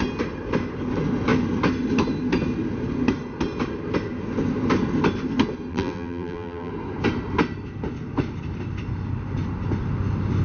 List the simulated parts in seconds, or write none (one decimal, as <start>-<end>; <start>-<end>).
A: 5.7-6.7